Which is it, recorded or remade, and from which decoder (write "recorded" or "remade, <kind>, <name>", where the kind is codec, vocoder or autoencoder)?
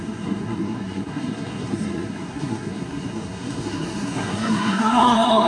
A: remade, codec, SNAC